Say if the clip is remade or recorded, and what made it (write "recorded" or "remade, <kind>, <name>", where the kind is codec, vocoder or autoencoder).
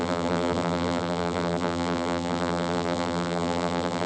remade, vocoder, BigVGAN v2